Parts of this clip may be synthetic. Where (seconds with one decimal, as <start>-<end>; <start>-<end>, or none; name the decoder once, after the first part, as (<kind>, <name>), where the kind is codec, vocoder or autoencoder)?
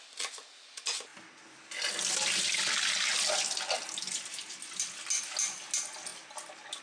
none